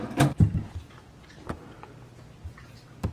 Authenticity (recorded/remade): recorded